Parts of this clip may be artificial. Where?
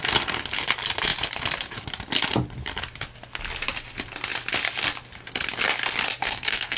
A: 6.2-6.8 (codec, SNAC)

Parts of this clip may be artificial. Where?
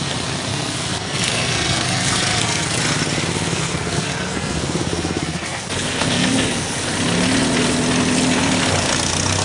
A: 0.5-2.8 (codec, SNAC); 3.3-6.8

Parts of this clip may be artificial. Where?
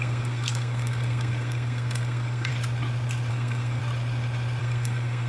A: 0.0-2.5 (codec, SNAC); 3.3-3.8; 4.6-5.3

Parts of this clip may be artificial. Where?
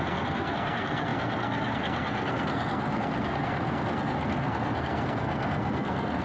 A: 0.0-6.2 (codec, SNAC)